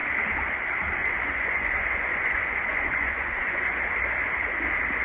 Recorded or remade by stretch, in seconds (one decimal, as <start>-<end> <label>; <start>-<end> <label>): 0.0-1.0 recorded; 1.0-3.8 remade; 3.8-5.0 recorded